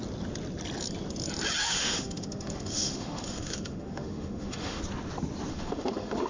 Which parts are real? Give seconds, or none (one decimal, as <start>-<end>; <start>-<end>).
0.0-1.6; 4.8-5.5